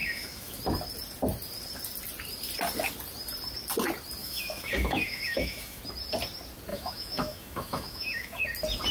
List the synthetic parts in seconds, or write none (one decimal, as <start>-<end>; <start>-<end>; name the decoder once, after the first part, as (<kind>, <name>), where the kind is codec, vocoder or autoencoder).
0.0-0.6 (autoencoder, DAC-VAE); 4.2-5.8; 6.7-8.4